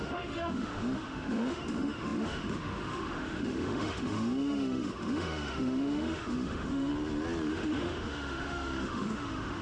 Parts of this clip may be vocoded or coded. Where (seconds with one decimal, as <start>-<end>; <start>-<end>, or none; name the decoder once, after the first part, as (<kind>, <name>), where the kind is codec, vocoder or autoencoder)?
0.0-6.9 (autoencoder, DAC-VAE); 7.5-9.6